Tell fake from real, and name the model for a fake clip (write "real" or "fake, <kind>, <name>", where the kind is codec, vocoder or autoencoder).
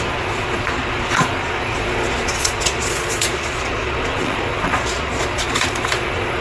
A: fake, vocoder, Vocos